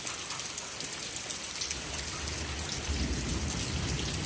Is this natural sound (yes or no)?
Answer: yes